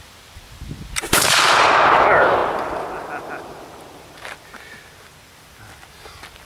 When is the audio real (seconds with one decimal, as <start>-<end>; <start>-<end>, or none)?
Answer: 0.0-6.4